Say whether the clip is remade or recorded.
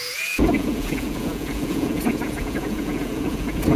remade